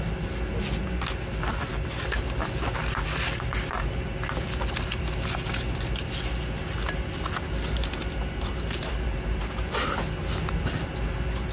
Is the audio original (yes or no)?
yes